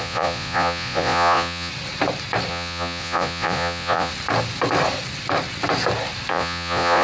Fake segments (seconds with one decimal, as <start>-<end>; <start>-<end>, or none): 0.0-1.7; 2.5-4.1; 6.3-7.0